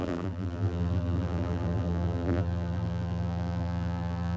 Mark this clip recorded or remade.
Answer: remade